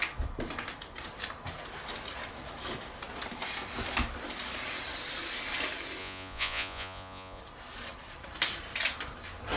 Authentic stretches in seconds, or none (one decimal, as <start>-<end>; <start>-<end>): 0.0-6.0; 7.4-9.6